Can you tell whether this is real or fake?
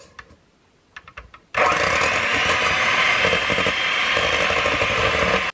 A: real